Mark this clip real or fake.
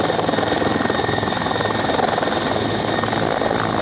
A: real